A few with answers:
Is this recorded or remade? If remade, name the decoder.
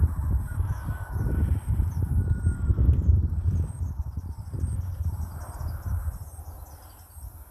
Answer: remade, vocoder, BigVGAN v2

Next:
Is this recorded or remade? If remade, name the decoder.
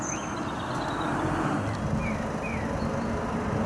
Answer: recorded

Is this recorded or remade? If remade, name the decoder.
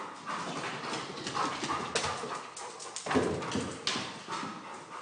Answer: recorded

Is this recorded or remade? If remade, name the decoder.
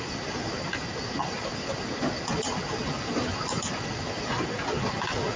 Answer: recorded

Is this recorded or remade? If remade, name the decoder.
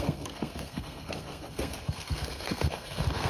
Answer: remade, codec, SNAC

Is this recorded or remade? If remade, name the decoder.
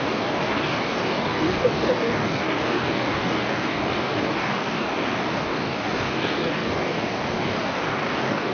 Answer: remade, codec, DAC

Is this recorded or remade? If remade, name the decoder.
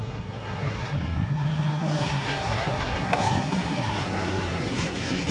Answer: remade, codec, SNAC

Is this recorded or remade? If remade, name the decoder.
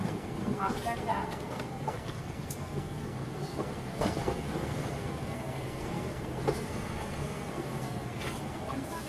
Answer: remade, codec, SNAC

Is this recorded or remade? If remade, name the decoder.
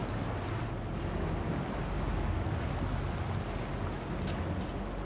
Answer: recorded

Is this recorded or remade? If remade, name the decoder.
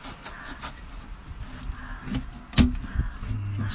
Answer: recorded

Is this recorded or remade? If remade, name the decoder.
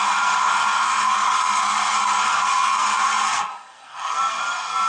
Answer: remade, codec, SNAC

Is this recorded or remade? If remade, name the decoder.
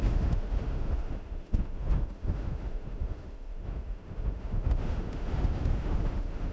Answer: remade, autoencoder, DAC-VAE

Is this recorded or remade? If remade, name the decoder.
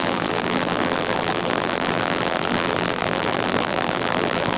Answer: remade, vocoder, BigVGAN v2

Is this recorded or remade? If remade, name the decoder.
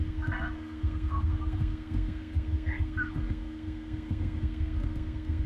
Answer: remade, codec, SNAC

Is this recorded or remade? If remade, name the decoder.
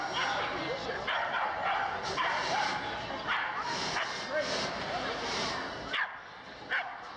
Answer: recorded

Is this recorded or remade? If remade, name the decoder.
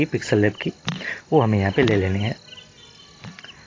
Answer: recorded